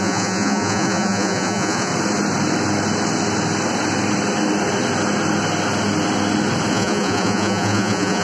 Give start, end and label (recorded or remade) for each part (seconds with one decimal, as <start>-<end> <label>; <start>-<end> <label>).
0.0-1.9 remade; 1.9-6.7 recorded; 6.7-8.2 remade